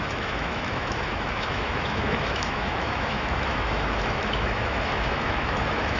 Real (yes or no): no